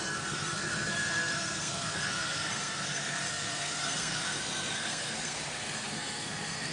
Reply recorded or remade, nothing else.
remade